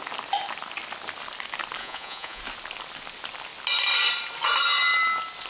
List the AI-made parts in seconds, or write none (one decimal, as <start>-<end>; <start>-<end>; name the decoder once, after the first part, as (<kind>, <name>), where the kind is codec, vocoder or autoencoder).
1.8-2.4 (vocoder, Vocos)